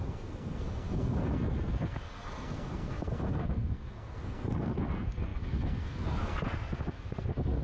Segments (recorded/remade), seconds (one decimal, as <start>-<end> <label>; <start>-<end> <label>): 0.0-7.6 remade